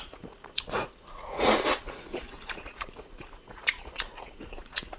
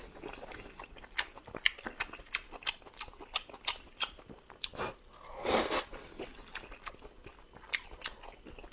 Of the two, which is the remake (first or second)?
first